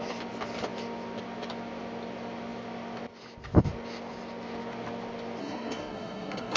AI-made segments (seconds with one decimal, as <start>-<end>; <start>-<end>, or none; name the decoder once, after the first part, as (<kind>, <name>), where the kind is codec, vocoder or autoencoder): 5.4-6.6 (codec, SNAC)

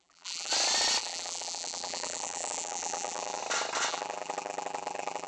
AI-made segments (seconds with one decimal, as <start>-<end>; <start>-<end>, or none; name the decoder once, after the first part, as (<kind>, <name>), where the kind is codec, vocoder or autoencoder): 0.0-0.5 (vocoder, BigVGAN v2); 1.0-3.4; 3.9-5.3

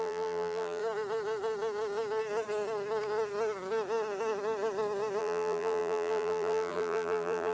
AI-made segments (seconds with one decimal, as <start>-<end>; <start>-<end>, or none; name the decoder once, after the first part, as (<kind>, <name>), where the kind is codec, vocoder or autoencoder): 0.0-0.8 (vocoder, BigVGAN v2); 5.2-7.5